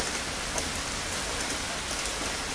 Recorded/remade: remade